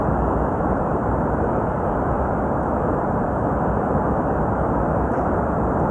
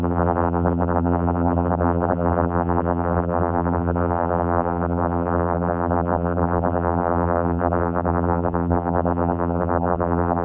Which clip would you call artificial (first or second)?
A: second